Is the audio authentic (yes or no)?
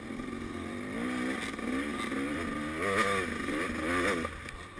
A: yes